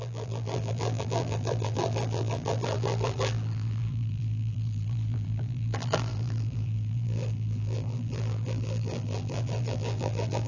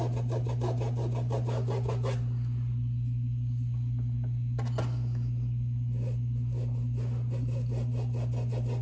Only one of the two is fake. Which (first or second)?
first